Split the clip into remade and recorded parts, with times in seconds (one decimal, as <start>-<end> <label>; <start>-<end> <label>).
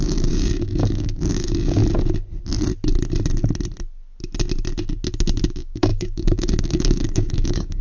0.0-1.8 remade; 1.8-5.4 recorded; 5.4-7.8 remade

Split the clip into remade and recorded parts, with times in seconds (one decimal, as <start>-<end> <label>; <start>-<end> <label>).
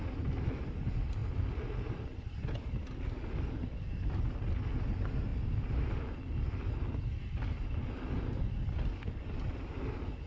0.0-10.3 recorded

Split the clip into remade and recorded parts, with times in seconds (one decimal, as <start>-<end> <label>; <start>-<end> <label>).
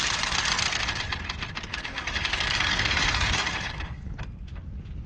0.0-1.7 recorded; 1.7-4.2 remade; 4.2-5.1 recorded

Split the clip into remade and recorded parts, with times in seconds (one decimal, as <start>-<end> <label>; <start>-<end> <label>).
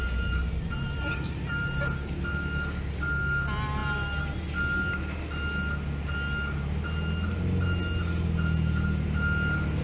0.0-9.8 recorded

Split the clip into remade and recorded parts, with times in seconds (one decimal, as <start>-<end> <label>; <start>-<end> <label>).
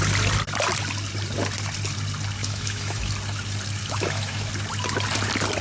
0.0-2.4 recorded; 2.4-3.1 remade; 3.1-3.8 recorded; 3.8-4.5 remade; 4.5-5.6 recorded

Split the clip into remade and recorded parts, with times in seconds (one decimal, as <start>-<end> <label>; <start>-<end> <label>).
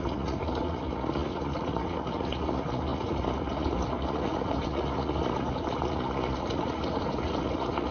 0.0-7.9 remade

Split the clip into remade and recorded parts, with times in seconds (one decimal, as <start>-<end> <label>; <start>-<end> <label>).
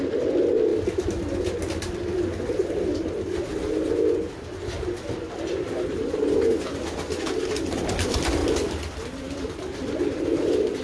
0.0-10.8 recorded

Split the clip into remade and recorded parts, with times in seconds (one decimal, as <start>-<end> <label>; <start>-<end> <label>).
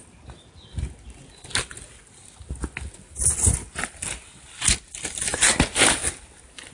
0.0-6.7 recorded